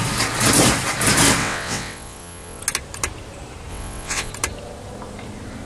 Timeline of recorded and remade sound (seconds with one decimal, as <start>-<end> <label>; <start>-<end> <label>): 0.0-1.4 recorded; 1.4-2.6 remade; 2.6-3.7 recorded; 3.7-4.3 remade; 4.3-5.7 recorded